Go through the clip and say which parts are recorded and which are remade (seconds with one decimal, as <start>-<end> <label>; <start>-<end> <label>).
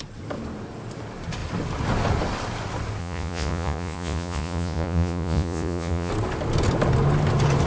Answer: 0.0-3.0 recorded; 3.0-6.1 remade; 6.1-7.7 recorded